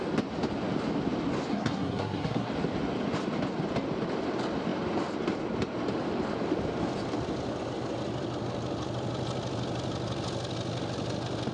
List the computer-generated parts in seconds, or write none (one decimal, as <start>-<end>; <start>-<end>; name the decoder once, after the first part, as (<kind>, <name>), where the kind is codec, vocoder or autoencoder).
1.5-2.5 (codec, SNAC)